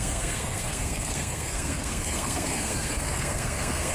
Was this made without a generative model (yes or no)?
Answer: no